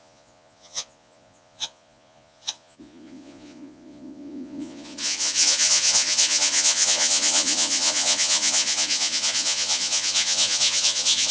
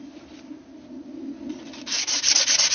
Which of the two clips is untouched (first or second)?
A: second